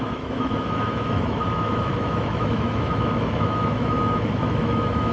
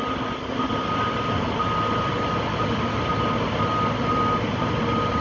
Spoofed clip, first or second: first